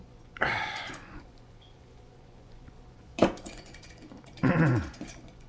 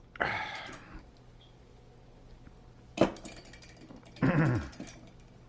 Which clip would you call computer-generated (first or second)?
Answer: first